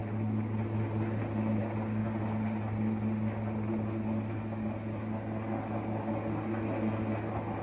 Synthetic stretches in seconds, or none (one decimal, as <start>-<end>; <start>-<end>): none